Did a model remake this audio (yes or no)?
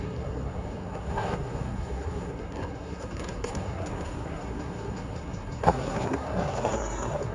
yes